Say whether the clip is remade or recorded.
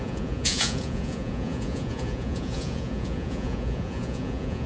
remade